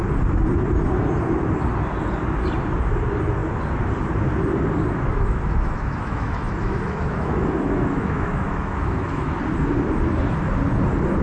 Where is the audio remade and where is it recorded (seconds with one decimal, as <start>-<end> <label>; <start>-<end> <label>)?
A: 0.0-5.1 recorded; 5.1-9.4 remade; 9.4-11.2 recorded